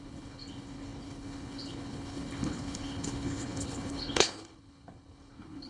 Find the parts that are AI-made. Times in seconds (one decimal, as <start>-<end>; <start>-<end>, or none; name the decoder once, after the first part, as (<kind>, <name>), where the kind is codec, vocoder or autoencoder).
0.0-5.7 (codec, HILCodec)